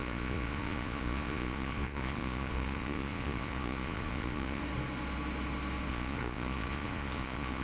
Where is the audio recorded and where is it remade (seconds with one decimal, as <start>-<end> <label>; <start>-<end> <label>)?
0.0-4.6 remade; 4.6-5.9 recorded; 5.9-7.6 remade